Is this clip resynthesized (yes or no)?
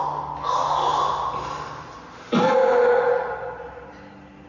no